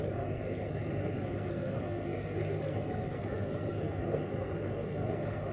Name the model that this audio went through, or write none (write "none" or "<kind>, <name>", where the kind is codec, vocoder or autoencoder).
codec, SNAC